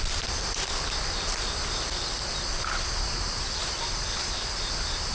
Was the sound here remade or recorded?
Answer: recorded